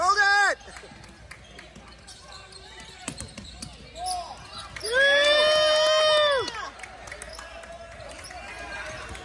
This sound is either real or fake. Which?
real